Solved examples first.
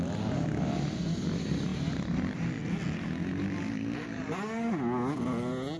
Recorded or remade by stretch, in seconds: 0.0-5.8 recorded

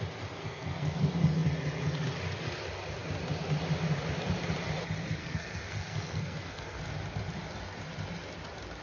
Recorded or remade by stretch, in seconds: 0.0-0.4 recorded; 0.4-1.0 remade; 1.0-5.2 recorded; 5.2-6.8 remade; 6.8-8.8 recorded